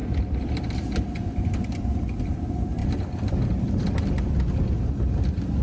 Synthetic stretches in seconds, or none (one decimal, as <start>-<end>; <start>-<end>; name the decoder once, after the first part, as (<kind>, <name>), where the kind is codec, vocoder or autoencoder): none